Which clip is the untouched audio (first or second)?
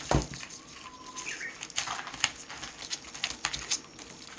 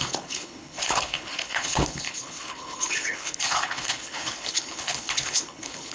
first